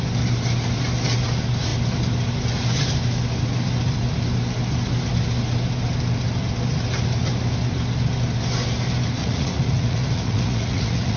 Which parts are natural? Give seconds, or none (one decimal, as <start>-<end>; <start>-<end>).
0.0-9.2